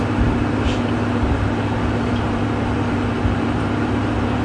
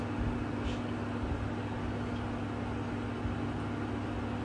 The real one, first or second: second